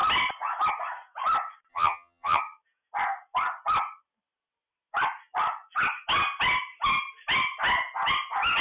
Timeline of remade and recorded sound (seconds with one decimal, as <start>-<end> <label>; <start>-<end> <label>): 0.0-1.7 recorded; 1.7-2.4 remade; 2.4-8.6 recorded